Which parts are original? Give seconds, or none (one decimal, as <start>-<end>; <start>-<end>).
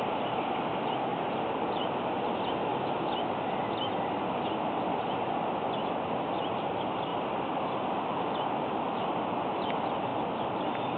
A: 0.0-11.0